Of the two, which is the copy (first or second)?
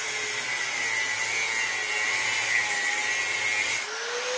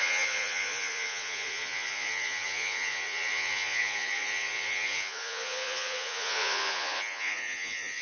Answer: second